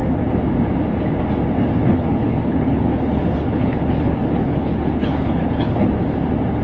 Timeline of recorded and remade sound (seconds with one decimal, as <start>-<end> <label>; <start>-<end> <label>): 0.0-1.9 recorded; 1.9-5.9 remade; 5.9-6.6 recorded